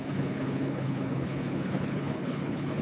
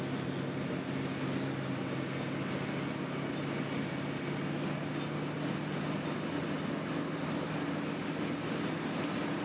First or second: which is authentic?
second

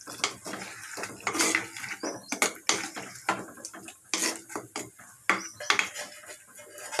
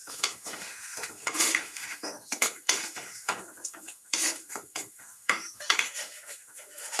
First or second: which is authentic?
first